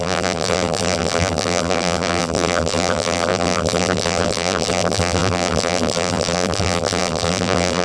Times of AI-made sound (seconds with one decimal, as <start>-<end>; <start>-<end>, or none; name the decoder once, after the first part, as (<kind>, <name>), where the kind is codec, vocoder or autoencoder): 0.0-7.8 (vocoder, BigVGAN v2)